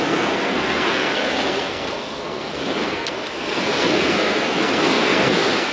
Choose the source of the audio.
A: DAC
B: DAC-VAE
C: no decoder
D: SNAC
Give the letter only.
D